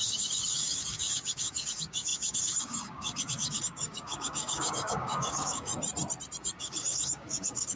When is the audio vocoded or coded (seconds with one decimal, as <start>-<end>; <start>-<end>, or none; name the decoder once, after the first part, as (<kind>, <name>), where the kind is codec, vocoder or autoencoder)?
0.0-5.7 (codec, DAC); 6.6-7.8